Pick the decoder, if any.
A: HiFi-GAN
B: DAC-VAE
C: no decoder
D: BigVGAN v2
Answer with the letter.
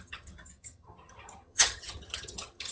A